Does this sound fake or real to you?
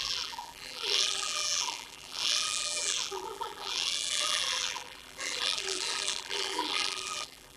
fake